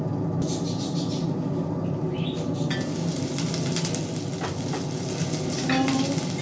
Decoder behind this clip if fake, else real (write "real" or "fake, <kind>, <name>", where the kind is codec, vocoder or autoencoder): real